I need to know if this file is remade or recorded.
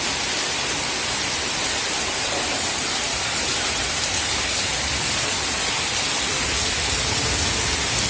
recorded